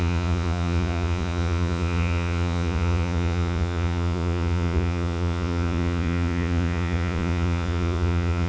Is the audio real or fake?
fake